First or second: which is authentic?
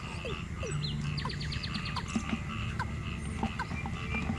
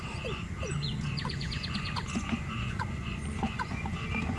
first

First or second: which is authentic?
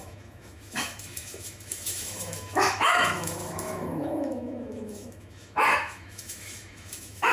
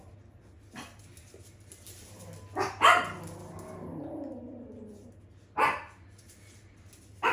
second